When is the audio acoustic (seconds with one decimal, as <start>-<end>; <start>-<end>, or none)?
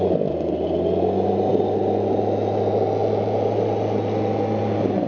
0.0-5.1